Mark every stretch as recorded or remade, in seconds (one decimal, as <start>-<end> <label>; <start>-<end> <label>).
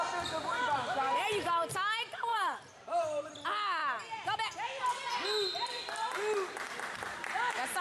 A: 0.0-0.5 recorded; 0.5-1.7 remade; 1.7-2.3 recorded; 2.3-3.3 remade; 3.3-7.8 recorded